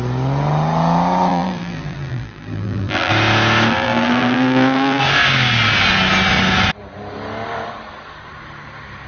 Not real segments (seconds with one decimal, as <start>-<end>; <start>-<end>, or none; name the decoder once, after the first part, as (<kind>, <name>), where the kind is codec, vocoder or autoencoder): 1.3-3.1 (vocoder, BigVGAN v2); 3.7-5.0